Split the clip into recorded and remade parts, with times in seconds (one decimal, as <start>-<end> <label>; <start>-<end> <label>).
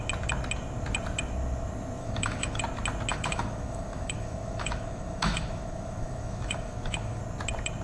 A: 0.0-2.0 recorded; 2.0-2.6 remade; 2.6-3.1 recorded; 3.1-7.2 remade; 7.2-7.8 recorded